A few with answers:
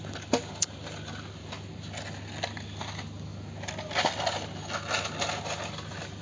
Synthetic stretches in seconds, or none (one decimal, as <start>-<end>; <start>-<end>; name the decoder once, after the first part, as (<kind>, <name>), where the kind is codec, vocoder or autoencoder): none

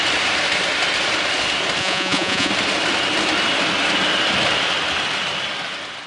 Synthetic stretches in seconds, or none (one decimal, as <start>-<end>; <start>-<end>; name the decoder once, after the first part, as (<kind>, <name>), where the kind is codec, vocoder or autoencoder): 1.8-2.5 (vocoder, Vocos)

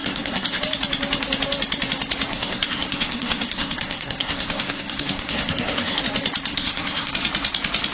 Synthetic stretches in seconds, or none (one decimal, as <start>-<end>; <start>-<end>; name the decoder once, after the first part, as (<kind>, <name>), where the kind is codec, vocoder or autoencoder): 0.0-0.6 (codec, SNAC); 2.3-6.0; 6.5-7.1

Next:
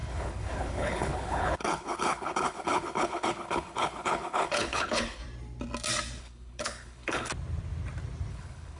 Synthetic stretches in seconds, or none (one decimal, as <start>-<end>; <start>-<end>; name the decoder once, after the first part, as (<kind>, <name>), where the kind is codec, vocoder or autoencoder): 0.0-5.2 (codec, HILCodec); 6.2-7.3; 8.3-8.8

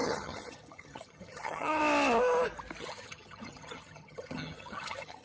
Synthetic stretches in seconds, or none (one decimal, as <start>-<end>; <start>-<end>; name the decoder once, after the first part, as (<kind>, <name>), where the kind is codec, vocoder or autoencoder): 0.0-1.8 (vocoder, HiFi-GAN); 2.8-5.2

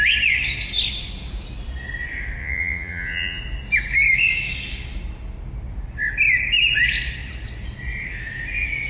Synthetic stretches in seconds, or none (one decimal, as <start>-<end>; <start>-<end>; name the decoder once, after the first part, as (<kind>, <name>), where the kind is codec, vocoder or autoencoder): 2.4-3.4 (vocoder, Vocos)